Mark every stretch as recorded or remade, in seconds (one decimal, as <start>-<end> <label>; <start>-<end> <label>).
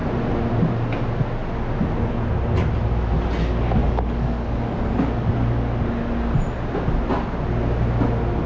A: 0.0-3.8 recorded; 3.8-5.1 remade; 5.1-8.5 recorded